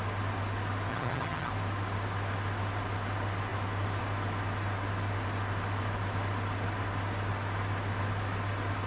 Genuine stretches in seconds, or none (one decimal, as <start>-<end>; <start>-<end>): 0.0-0.9; 1.5-8.9

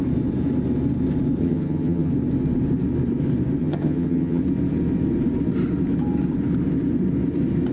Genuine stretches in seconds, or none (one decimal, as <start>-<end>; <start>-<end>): 0.0-1.4; 2.1-3.6; 4.4-7.7

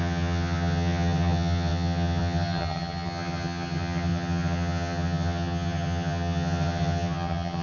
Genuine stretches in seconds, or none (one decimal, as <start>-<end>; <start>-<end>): none